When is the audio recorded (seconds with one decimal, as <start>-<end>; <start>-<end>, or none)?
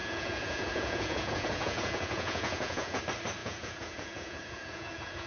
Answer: 3.0-3.4